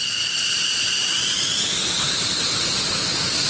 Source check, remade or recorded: recorded